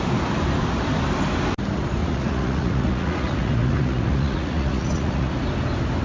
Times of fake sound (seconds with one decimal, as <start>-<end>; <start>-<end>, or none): 2.0-5.3